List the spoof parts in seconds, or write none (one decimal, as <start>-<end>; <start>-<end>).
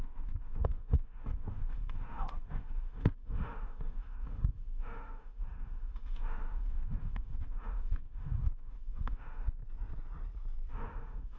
0.0-9.6; 10.7-11.4